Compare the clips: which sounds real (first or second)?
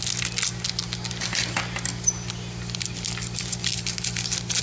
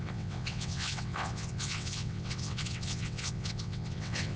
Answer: first